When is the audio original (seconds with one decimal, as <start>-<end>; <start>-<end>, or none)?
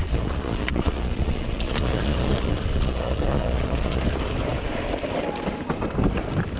4.0-6.6